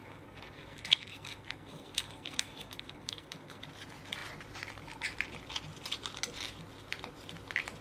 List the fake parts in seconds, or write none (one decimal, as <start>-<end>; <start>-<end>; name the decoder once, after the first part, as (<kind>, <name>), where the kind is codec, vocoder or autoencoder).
0.0-3.6 (codec, SNAC)